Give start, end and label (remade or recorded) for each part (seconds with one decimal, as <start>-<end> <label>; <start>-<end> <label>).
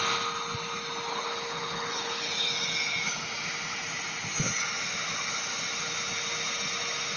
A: 0.0-1.1 recorded; 1.1-2.5 remade; 2.5-7.2 recorded